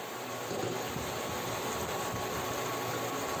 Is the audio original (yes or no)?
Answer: yes